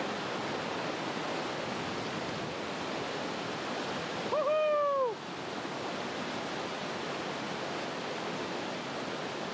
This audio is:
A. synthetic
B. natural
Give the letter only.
B